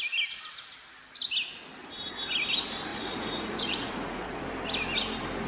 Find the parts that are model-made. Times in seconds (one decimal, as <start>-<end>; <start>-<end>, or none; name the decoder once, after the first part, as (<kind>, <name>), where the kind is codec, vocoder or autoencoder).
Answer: 2.9-4.4 (vocoder, Vocos)